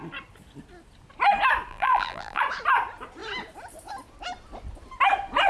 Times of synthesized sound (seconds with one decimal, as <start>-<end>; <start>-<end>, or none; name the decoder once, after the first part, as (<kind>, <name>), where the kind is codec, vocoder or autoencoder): 1.7-2.4 (vocoder, BigVGAN v2)